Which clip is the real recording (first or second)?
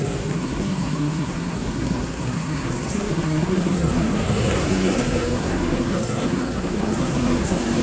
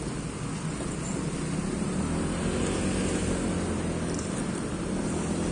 second